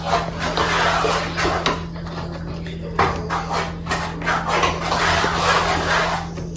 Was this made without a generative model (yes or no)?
yes